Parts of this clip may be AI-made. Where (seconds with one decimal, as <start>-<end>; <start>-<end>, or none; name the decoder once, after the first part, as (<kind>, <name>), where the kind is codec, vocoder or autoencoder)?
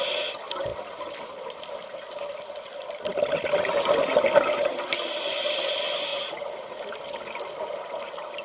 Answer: 6.1-6.8 (vocoder, Vocos)